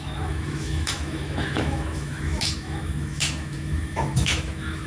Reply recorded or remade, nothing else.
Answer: remade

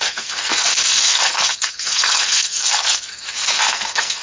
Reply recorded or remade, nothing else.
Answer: remade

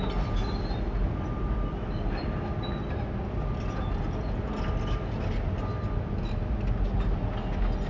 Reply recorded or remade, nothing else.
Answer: recorded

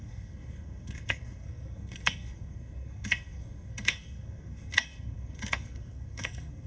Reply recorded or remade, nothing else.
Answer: remade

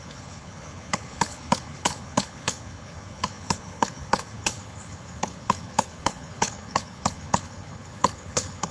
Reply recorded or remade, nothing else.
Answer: remade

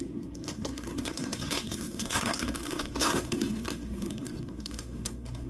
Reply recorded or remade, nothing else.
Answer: remade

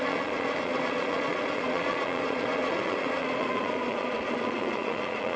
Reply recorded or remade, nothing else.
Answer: remade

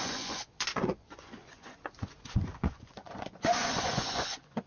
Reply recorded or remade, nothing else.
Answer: remade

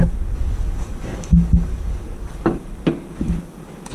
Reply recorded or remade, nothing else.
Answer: remade